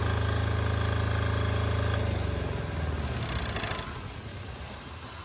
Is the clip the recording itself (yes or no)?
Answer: yes